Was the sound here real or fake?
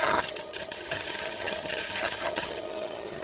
fake